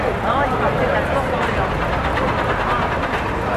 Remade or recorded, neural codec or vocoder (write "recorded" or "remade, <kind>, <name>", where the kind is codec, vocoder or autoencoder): recorded